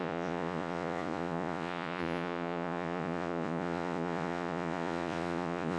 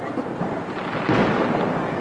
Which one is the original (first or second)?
second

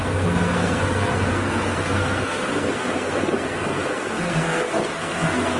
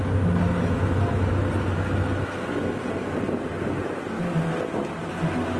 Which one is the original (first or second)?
second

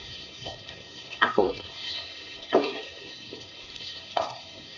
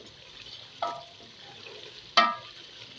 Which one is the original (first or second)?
second